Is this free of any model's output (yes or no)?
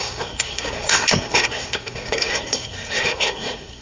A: no